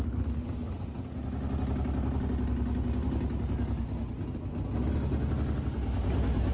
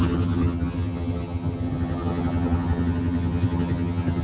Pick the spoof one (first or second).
second